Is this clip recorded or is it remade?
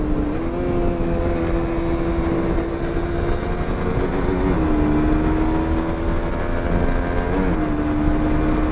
recorded